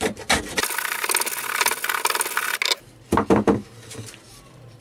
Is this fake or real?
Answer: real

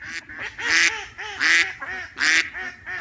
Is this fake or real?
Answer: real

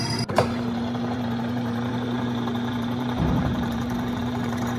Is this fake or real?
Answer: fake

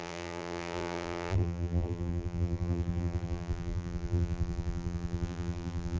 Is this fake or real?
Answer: fake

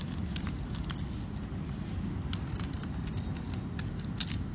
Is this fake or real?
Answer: real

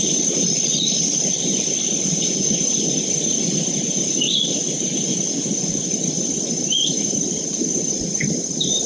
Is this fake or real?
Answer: fake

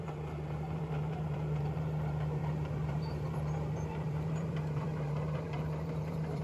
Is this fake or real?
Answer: fake